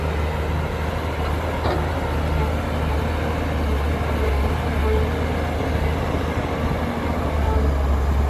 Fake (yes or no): no